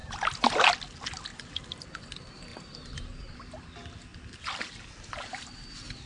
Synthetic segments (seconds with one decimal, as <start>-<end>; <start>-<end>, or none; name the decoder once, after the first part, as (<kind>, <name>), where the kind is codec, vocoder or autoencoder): 0.0-0.7 (vocoder, BigVGAN v2); 2.5-3.2